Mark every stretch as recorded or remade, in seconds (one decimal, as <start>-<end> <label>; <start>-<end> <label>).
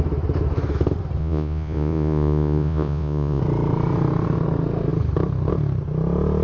0.0-1.2 recorded; 1.2-3.4 remade; 3.4-6.4 recorded